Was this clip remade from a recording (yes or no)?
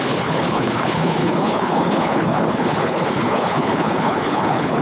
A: yes